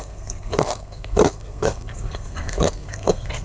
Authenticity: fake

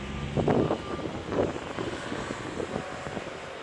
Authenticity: real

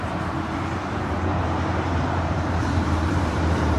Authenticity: fake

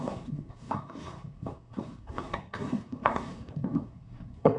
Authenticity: fake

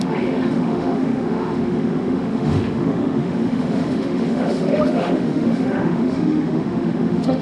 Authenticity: fake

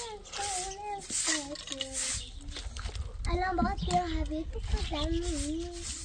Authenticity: real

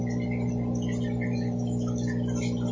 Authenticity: real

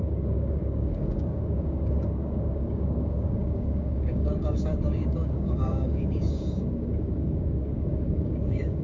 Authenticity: fake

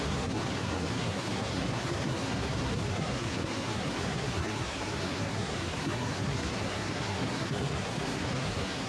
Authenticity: fake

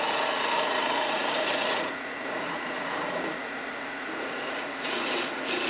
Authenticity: fake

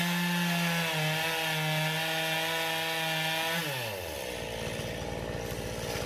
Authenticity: real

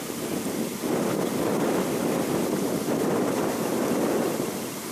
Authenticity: real